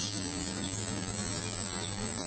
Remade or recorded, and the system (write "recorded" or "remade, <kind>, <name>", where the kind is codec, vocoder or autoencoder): remade, vocoder, BigVGAN v2